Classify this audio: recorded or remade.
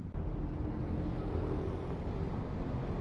recorded